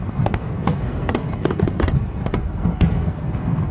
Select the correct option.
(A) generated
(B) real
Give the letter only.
A